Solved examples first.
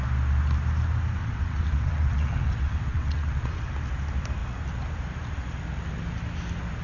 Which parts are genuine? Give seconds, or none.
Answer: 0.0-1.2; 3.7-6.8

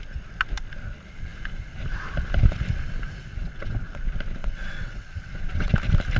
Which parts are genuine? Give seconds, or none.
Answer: 0.0-3.3; 3.9-4.4; 5.7-6.2

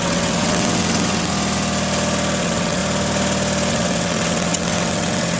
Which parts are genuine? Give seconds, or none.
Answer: 1.3-2.4; 2.8-3.7